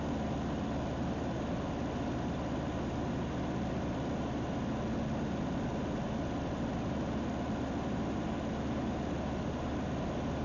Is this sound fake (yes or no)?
no